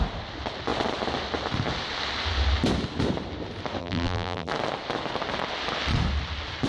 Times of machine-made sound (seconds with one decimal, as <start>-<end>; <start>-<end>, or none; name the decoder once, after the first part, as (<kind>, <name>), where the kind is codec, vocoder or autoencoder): 3.8-4.5 (vocoder, BigVGAN v2)